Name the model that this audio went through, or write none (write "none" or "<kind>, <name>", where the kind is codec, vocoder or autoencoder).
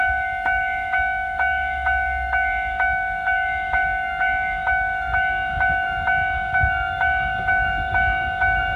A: autoencoder, DAC-VAE